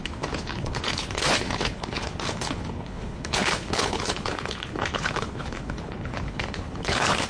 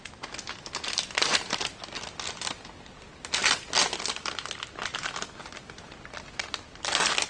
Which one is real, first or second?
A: second